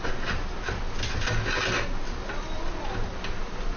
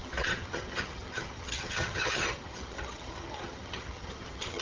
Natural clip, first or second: first